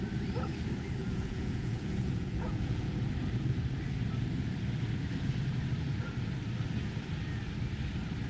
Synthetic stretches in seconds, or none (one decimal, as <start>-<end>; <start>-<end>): 1.0-2.8